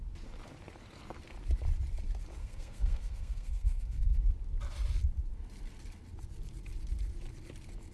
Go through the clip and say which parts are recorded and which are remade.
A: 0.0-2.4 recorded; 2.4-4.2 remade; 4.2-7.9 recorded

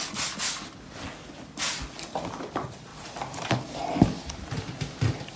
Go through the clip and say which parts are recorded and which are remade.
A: 0.0-2.9 recorded; 2.9-4.5 remade; 4.5-5.4 recorded